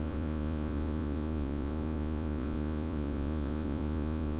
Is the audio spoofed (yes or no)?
yes